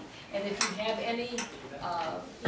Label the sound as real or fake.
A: real